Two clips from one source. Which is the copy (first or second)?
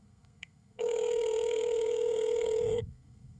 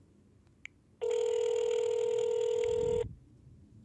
first